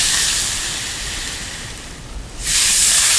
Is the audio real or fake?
real